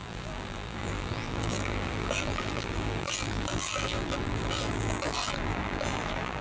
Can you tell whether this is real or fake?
fake